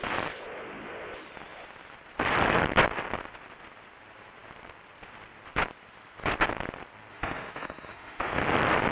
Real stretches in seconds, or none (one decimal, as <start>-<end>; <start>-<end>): 0.0-7.1; 8.4-8.9